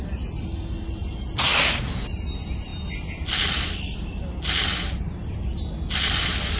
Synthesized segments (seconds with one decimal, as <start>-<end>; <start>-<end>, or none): none

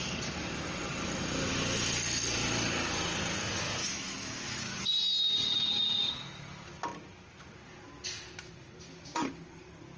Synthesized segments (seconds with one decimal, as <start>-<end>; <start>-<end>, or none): 3.8-4.8

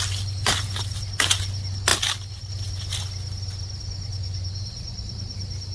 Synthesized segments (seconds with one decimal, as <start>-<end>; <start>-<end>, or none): none

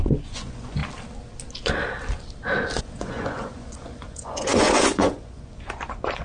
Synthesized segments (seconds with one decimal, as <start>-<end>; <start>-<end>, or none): 0.0-0.8; 2.8-6.2